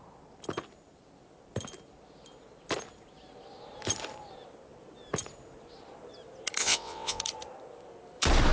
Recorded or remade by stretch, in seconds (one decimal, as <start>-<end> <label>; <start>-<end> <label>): 0.0-6.6 recorded; 6.6-7.2 remade; 7.2-8.5 recorded